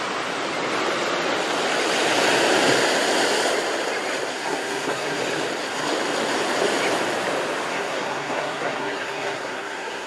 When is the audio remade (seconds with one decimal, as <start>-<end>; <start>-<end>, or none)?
4.3-5.2; 7.7-10.1